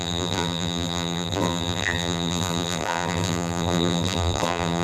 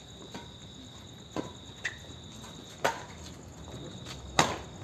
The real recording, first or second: second